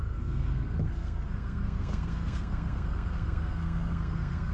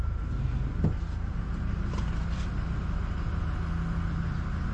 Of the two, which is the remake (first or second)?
first